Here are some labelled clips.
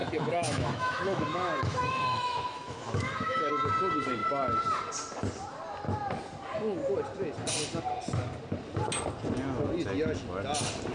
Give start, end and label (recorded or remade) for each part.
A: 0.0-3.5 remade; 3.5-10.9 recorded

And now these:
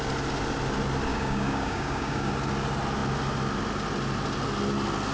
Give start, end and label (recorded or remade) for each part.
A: 0.0-1.1 recorded; 1.1-2.3 remade; 2.3-5.1 recorded

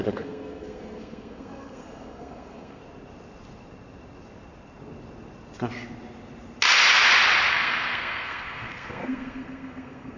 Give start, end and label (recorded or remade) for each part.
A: 0.0-2.8 remade; 2.8-7.5 recorded; 7.5-10.2 remade